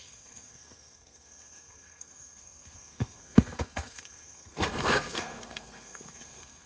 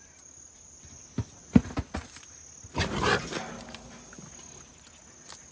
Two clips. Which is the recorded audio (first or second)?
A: second